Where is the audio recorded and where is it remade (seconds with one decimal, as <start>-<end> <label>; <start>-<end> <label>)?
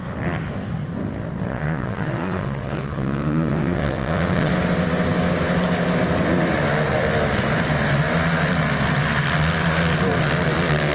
0.0-1.5 recorded; 1.5-4.5 remade; 4.5-10.9 recorded